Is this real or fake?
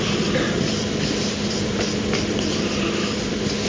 fake